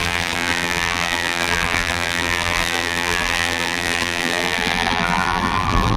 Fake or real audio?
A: fake